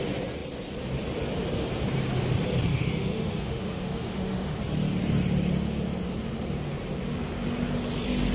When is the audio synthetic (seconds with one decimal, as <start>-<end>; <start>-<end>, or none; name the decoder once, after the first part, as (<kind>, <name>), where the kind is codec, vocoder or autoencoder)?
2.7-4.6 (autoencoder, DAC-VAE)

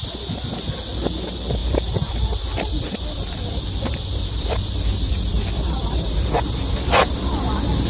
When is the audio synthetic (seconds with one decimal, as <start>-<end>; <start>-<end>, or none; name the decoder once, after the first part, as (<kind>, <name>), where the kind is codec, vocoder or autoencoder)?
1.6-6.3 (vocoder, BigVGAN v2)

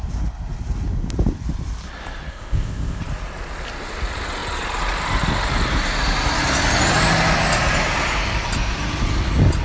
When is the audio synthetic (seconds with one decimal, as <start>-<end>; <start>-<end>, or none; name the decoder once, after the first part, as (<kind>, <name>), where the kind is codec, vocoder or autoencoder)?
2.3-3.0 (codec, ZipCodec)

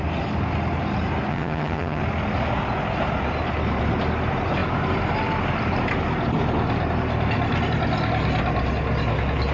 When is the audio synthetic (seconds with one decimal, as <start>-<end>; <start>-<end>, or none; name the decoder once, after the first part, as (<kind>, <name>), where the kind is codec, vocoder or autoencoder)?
1.3-2.0 (vocoder, HiFi-GAN)

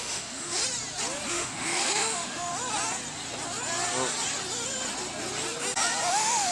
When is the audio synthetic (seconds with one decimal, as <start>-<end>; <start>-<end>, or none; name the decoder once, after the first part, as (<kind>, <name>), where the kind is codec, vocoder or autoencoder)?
0.0-0.6 (autoencoder, DAC-VAE); 1.3-2.5; 6.1-6.5

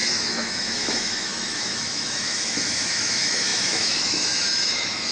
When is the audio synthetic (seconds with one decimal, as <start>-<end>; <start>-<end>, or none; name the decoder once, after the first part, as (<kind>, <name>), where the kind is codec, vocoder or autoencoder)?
0.0-5.1 (autoencoder, DAC-VAE)